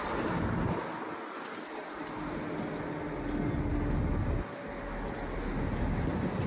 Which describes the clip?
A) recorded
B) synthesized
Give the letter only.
A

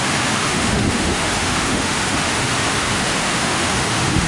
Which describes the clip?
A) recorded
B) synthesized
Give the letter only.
B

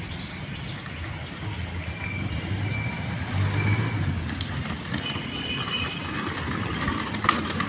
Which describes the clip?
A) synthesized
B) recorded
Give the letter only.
B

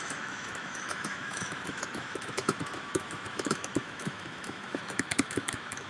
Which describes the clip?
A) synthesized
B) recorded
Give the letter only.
A